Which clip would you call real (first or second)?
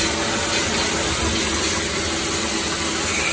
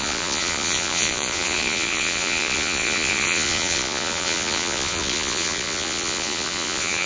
first